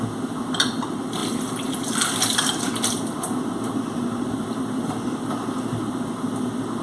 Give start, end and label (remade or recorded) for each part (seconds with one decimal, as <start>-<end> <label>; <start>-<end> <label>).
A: 0.0-6.8 recorded